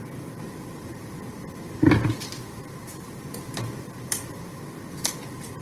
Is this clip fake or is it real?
fake